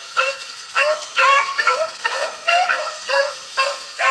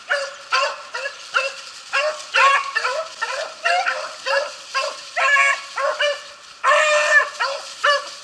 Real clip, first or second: second